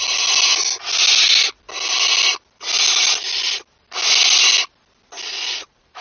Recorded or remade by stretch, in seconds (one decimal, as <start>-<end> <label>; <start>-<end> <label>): 0.0-5.3 recorded; 5.3-6.0 remade